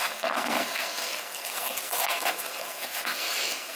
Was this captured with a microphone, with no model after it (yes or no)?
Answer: no